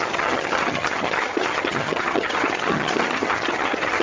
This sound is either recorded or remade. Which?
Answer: remade